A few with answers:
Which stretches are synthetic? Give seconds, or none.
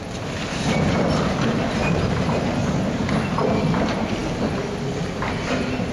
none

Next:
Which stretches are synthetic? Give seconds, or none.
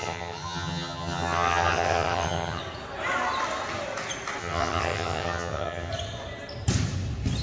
0.0-2.6 (vocoder, HiFi-GAN); 4.4-5.9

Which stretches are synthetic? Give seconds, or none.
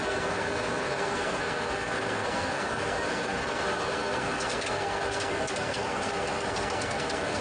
0.0-7.4 (codec, SNAC)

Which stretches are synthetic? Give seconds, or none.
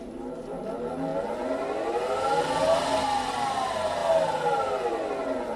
none